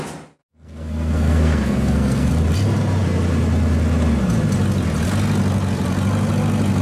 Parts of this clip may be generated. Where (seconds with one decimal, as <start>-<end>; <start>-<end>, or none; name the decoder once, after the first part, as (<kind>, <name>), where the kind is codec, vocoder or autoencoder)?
0.4-2.3 (codec, SNAC)